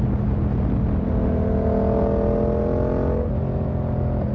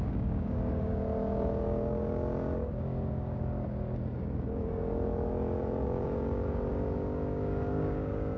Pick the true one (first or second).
first